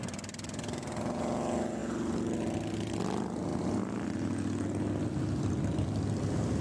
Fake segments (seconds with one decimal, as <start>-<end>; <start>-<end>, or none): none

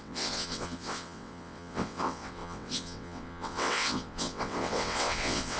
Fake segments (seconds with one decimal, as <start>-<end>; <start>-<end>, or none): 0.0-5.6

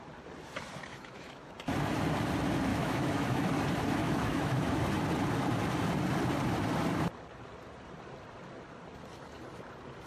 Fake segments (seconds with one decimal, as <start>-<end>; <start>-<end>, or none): 0.9-1.5; 2.7-3.5; 4.0-4.8

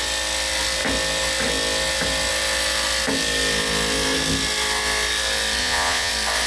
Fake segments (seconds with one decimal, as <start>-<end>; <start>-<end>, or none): 5.6-6.1